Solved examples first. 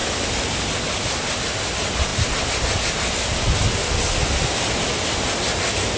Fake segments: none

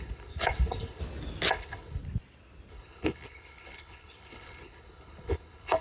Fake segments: 0.0-1.0 (codec, HILCodec); 1.5-2.0; 2.7-5.8

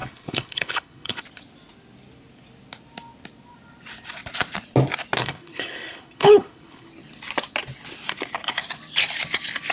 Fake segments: 0.0-1.2 (codec, HILCodec); 5.2-6.9

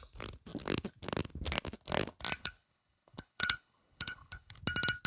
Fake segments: 2.4-4.6 (codec, HILCodec)

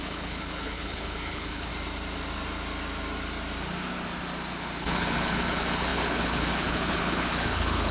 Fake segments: 0.0-1.7 (codec, HILCodec); 4.5-7.9

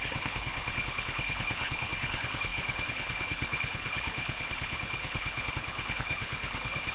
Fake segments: 0.0-6.9 (codec, HILCodec)